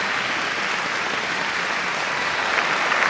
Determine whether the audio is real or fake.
real